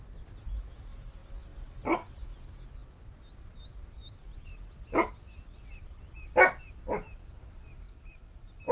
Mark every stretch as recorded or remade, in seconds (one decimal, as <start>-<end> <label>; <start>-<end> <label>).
0.0-8.7 recorded